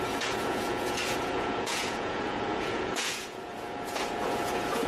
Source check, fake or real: fake